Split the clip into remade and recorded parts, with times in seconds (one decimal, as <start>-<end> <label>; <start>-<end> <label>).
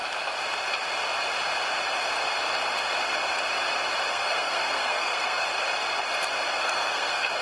0.0-4.1 recorded; 4.1-5.5 remade; 5.5-6.6 recorded; 6.6-7.4 remade